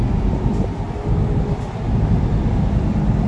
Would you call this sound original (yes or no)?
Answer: yes